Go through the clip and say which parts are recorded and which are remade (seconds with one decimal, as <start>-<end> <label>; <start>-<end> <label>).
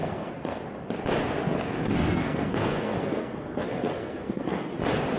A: 0.0-0.6 remade; 0.6-1.6 recorded; 1.6-4.7 remade; 4.7-5.2 recorded